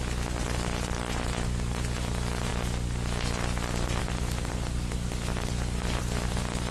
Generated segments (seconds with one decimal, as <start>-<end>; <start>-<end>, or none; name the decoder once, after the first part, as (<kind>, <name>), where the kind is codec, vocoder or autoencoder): none